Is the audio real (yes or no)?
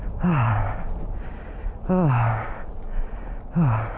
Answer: yes